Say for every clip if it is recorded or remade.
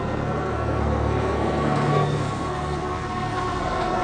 remade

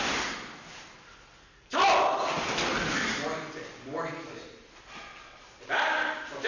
recorded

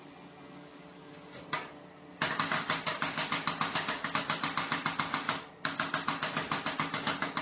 recorded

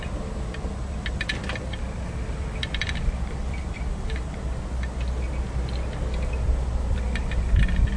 recorded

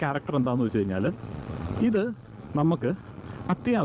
remade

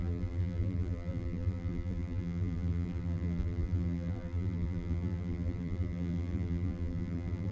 remade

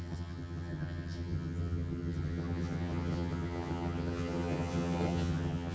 remade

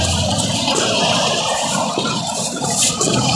recorded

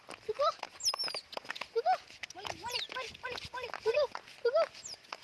recorded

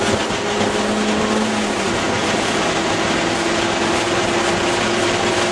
recorded